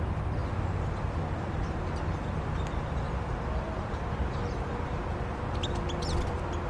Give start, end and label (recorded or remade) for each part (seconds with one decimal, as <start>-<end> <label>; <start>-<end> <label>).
0.0-6.7 recorded